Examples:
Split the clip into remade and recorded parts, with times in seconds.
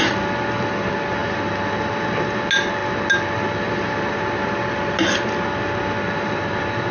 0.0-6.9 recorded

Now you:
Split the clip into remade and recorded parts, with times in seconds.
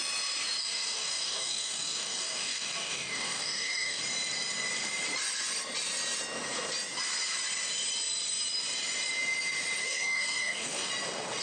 0.0-0.6 recorded; 0.6-4.0 remade; 4.0-9.8 recorded; 9.8-10.9 remade; 10.9-11.4 recorded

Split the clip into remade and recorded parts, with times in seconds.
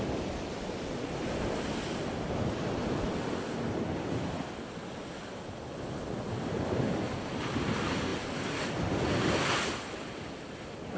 0.0-11.0 recorded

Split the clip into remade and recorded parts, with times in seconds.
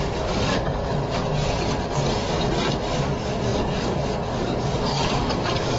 0.0-0.8 remade; 0.8-3.0 recorded; 3.0-5.8 remade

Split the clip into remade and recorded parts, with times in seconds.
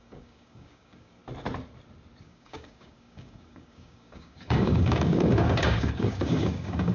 0.0-1.2 remade; 1.2-2.2 recorded; 2.2-6.9 remade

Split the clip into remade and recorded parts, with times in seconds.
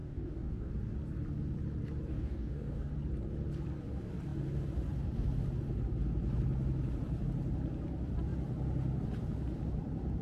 0.0-0.7 remade; 0.7-2.1 recorded; 2.1-2.9 remade; 2.9-10.2 recorded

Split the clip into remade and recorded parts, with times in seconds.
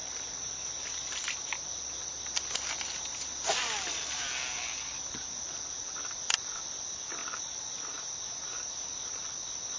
0.0-9.8 recorded